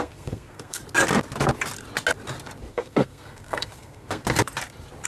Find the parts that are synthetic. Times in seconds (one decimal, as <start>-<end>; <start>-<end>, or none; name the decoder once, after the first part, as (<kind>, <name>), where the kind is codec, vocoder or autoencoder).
0.0-0.8 (codec, SNAC); 2.7-4.2